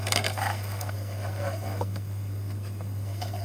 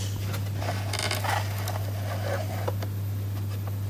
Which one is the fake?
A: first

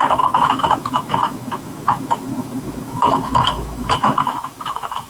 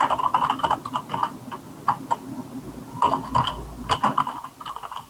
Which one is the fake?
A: first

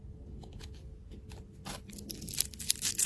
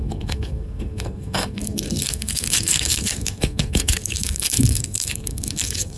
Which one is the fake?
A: second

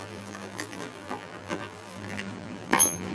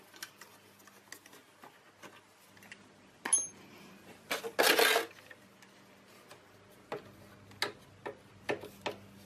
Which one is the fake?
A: first